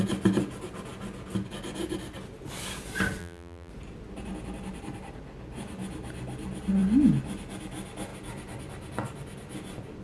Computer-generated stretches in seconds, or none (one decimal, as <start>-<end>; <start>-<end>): 3.2-3.7